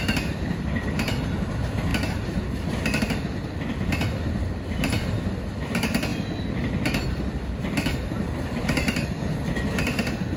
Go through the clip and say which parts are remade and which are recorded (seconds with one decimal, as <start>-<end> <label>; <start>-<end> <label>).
0.0-1.9 remade; 1.9-3.0 recorded; 3.0-6.1 remade; 6.1-6.7 recorded; 6.7-10.4 remade